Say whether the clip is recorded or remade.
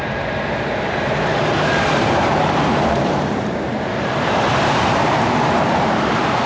remade